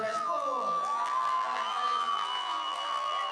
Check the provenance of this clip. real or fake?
fake